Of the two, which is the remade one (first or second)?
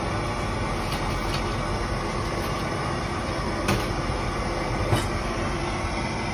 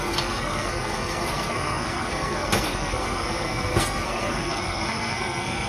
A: second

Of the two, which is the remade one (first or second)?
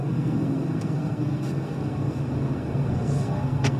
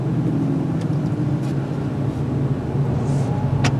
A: first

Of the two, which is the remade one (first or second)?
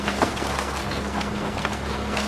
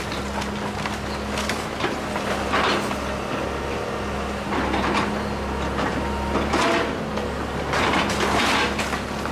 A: first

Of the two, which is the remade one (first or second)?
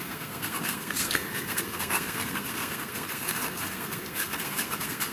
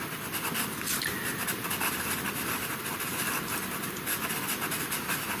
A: first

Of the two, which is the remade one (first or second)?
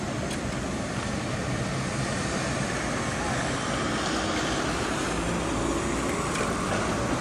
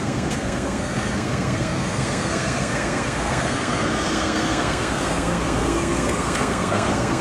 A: second